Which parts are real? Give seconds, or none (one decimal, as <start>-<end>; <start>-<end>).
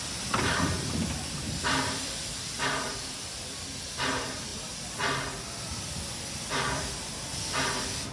4.5-5.6